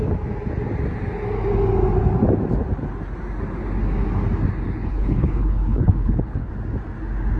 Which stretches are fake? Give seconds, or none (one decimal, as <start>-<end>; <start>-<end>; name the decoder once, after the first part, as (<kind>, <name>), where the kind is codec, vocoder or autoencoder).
4.9-6.5 (codec, HILCodec)